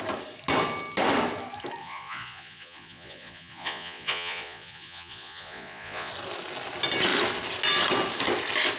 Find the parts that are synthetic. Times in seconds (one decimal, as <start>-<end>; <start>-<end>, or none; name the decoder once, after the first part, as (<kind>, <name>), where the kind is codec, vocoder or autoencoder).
1.8-6.1 (vocoder, Vocos)